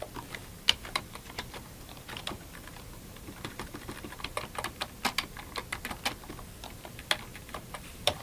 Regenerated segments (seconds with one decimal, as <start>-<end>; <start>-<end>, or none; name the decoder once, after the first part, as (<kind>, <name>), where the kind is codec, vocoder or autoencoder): 0.4-4.4 (vocoder, BigVGAN v2); 7.3-8.2

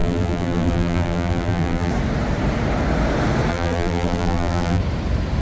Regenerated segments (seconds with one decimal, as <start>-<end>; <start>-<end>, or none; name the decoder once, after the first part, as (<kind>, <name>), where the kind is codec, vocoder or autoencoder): 0.0-1.9 (vocoder, BigVGAN v2); 3.5-4.8

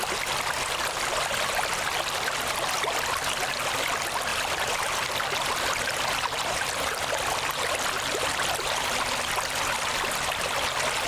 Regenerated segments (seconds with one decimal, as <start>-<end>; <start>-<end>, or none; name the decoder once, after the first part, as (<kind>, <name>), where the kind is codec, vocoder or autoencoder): none

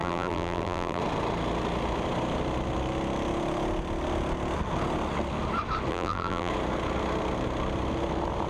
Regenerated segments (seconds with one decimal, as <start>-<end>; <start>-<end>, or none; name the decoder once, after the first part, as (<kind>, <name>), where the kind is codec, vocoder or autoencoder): 0.0-1.0 (vocoder, BigVGAN v2); 5.9-6.5

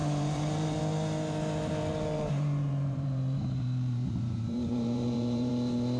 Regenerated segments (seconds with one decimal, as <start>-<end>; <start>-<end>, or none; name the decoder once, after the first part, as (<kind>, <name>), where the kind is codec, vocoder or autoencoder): 0.0-0.8 (vocoder, BigVGAN v2); 1.9-5.5